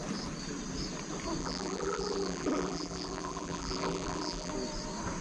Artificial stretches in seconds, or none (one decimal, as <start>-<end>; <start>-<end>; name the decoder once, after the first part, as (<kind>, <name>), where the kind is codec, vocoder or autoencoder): 1.4-4.5 (vocoder, BigVGAN v2)